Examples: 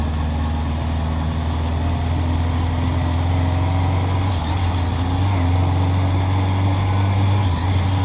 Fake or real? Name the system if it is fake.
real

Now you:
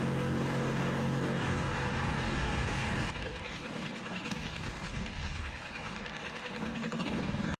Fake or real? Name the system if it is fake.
fake, codec, DAC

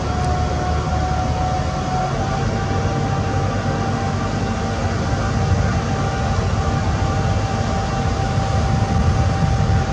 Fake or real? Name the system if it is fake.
real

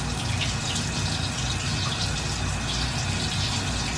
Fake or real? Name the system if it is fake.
real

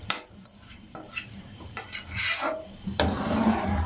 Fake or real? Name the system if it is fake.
fake, vocoder, BigVGAN v2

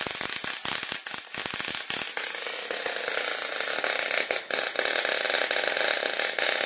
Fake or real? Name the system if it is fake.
real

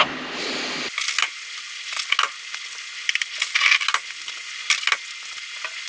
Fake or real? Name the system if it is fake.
real